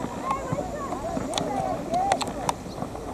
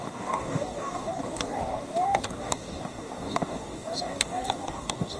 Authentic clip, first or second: first